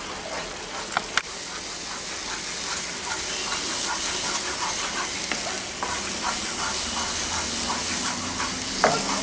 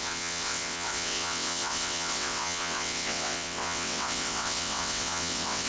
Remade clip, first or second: second